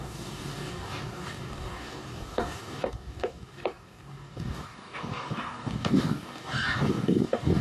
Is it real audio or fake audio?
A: fake